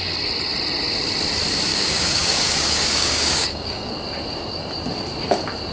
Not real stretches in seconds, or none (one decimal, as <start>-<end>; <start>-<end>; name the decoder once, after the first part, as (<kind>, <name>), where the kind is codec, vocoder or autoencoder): 1.7-3.9 (codec, DAC)